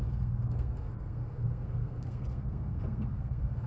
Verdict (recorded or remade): remade